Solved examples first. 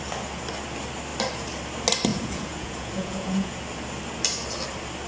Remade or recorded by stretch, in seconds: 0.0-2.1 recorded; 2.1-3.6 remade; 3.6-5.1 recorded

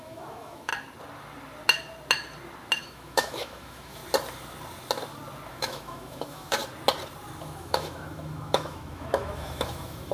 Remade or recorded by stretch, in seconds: 0.0-0.7 remade; 0.7-2.8 recorded; 2.8-4.0 remade; 4.0-5.5 recorded; 5.5-6.6 remade; 6.6-7.4 recorded; 7.4-10.1 remade

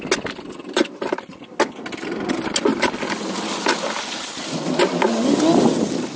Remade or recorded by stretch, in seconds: 0.0-0.6 recorded; 0.6-1.4 remade; 1.4-6.2 recorded

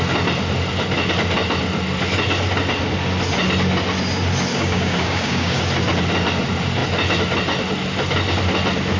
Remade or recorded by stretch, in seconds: 0.0-4.5 recorded; 4.5-5.6 remade; 5.6-9.0 recorded

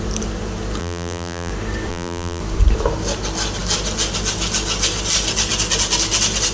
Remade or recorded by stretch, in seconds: 0.0-0.8 recorded; 0.8-1.5 remade; 1.5-1.9 recorded; 1.9-2.4 remade; 2.4-6.5 recorded

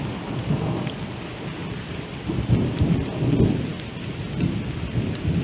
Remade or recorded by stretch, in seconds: 0.0-1.6 recorded; 1.6-2.8 remade; 2.8-5.4 recorded

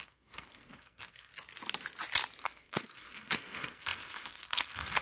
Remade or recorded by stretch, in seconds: 0.0-1.3 remade; 1.3-2.4 recorded; 2.4-5.0 remade